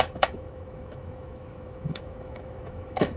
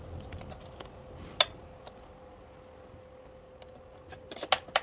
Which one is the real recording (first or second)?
second